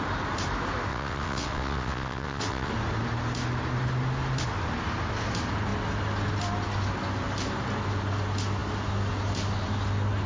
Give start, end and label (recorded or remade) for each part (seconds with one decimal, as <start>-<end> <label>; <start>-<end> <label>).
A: 0.0-0.9 recorded; 0.9-2.7 remade; 2.7-10.3 recorded